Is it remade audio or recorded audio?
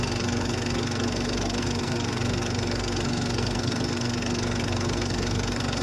remade